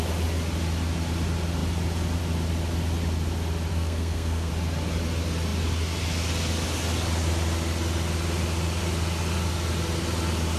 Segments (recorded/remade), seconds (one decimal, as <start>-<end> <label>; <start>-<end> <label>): 0.0-3.7 recorded; 3.7-4.5 remade; 4.5-10.6 recorded